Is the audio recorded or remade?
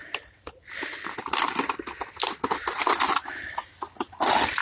recorded